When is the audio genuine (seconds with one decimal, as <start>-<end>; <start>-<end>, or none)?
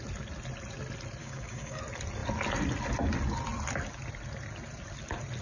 0.0-1.2; 1.8-5.4